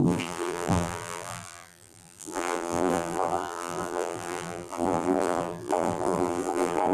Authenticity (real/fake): fake